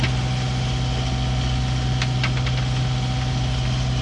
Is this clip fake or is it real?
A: real